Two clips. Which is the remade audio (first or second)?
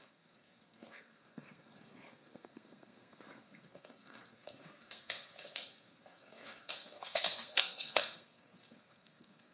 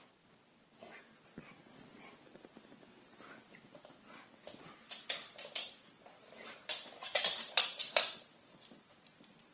first